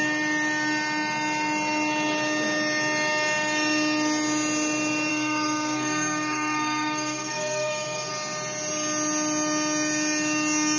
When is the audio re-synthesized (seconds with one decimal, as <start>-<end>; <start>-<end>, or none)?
5.1-8.1